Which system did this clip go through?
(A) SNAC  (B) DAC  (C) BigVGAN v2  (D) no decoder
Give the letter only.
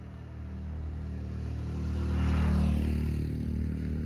D